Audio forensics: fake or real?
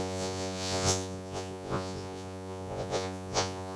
fake